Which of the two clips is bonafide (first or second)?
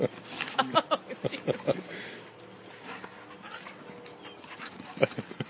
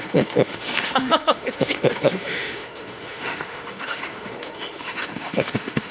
first